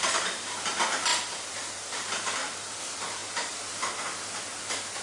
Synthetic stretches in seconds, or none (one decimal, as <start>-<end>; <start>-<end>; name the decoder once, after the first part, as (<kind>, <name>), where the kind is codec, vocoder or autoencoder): 1.1-2.8 (vocoder, BigVGAN v2)